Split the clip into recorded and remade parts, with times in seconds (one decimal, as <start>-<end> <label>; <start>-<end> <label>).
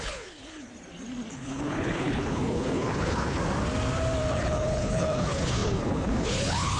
0.0-0.7 remade; 0.7-1.3 recorded; 1.3-3.4 remade; 3.4-4.3 recorded; 4.3-6.8 remade